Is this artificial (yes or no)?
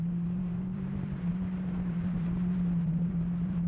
yes